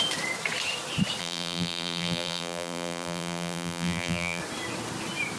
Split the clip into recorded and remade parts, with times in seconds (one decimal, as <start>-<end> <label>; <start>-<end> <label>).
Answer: 0.0-1.2 recorded; 1.2-4.4 remade; 4.4-5.4 recorded